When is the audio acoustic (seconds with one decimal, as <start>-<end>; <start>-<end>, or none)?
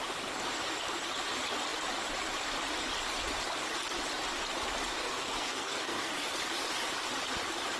0.0-5.0; 6.1-7.8